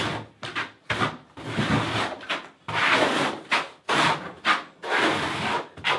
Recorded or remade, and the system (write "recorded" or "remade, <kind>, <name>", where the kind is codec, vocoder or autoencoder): recorded